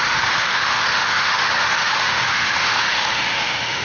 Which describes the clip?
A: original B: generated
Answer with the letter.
B